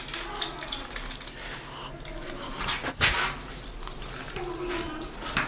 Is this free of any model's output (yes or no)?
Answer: yes